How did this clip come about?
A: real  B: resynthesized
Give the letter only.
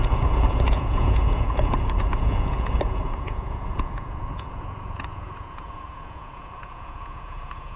B